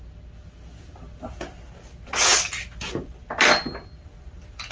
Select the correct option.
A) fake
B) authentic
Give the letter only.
B